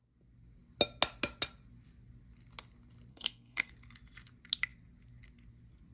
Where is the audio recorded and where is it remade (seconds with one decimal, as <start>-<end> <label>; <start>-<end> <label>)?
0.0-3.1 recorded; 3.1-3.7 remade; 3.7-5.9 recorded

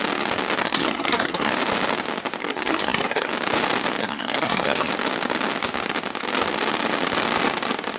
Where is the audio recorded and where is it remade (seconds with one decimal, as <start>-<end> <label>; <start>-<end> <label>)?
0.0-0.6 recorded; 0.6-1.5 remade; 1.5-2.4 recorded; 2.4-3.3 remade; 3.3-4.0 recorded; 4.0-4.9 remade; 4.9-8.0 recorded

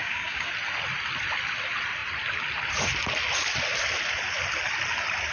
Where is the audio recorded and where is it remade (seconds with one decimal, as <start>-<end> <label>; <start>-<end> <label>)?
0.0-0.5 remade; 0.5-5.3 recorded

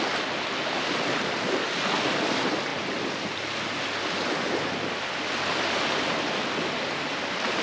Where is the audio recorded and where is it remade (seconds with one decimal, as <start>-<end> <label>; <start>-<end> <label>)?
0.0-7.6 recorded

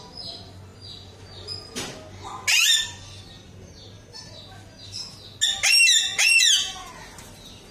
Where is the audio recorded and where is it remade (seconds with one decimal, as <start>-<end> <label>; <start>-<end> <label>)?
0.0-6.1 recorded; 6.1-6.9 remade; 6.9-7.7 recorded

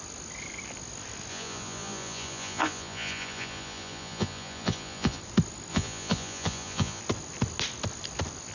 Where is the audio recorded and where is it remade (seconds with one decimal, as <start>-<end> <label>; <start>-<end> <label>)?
0.0-1.3 recorded; 1.3-5.2 remade; 5.2-5.7 recorded; 5.7-7.0 remade; 7.0-8.5 recorded